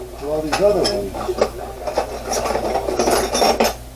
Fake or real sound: real